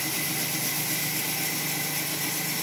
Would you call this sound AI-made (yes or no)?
no